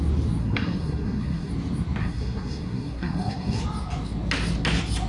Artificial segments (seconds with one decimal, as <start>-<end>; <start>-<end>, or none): 0.4-1.5; 2.0-3.6